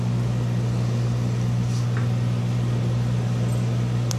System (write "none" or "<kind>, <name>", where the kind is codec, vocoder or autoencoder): none